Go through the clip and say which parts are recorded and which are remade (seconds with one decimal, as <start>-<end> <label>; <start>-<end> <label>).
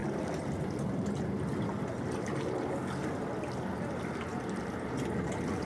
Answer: 0.0-5.7 recorded